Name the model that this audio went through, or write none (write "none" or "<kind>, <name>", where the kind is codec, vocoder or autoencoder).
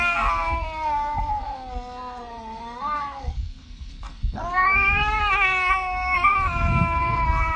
codec, SNAC